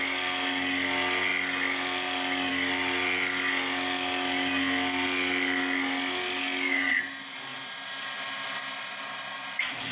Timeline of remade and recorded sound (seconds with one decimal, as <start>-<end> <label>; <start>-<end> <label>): 0.0-9.9 recorded